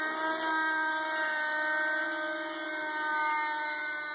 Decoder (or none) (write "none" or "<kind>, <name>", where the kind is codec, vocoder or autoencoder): none